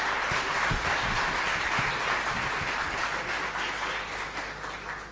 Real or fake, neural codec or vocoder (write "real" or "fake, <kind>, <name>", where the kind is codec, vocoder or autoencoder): real